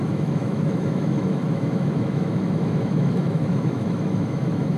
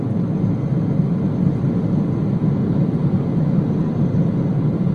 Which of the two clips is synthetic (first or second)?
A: first